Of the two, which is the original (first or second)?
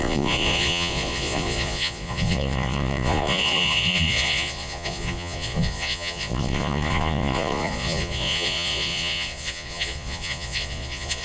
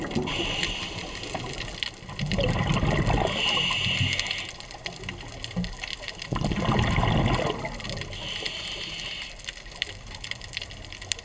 second